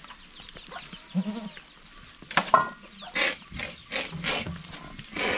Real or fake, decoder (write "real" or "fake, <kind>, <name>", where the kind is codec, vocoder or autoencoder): real